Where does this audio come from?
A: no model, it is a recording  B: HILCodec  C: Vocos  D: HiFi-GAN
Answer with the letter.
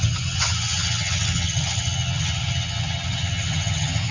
D